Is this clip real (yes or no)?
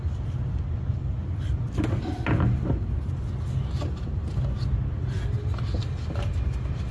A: yes